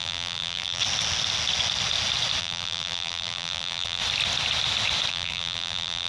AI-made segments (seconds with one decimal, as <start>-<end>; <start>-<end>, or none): 0.0-0.8; 2.4-4.0; 5.1-6.1